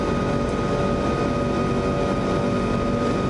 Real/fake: real